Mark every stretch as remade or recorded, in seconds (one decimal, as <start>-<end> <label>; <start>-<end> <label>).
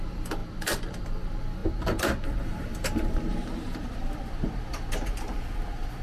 0.0-6.0 remade